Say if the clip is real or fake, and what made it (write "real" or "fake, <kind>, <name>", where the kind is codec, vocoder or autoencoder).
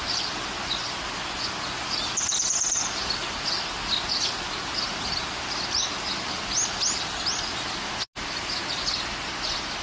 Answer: real